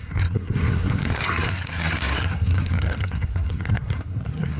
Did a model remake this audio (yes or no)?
yes